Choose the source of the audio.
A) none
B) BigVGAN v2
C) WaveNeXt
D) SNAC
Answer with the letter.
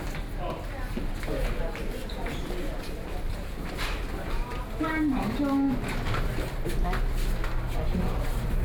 A